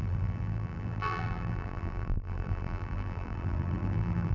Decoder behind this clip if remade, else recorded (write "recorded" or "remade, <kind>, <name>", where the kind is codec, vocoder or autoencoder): remade, vocoder, BigVGAN v2